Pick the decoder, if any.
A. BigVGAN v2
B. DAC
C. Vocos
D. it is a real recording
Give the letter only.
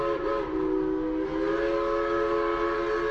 D